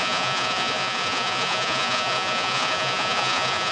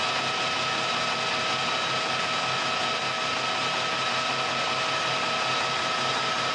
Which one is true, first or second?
second